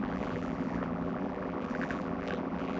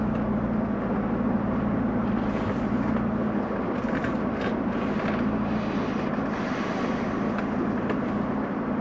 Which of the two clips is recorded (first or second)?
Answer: second